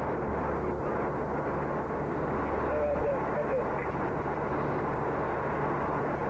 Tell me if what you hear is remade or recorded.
recorded